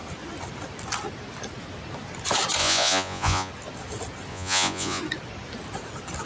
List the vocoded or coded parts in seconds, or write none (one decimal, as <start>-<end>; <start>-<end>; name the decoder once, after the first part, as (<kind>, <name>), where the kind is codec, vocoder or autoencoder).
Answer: 2.6-3.5 (vocoder, Vocos); 4.3-5.0